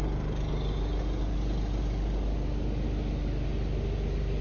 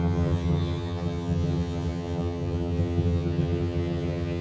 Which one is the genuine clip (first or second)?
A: first